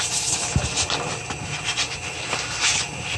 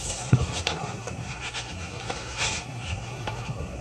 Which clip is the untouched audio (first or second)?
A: first